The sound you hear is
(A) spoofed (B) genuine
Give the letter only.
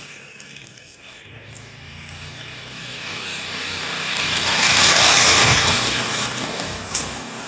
A